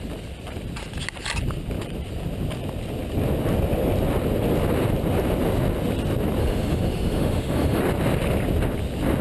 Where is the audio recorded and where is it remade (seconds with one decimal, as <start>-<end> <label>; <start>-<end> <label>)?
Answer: 0.0-6.4 recorded; 6.4-7.8 remade; 7.8-9.2 recorded